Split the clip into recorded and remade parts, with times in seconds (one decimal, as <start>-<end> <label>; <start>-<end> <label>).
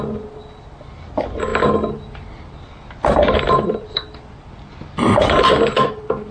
0.0-6.3 recorded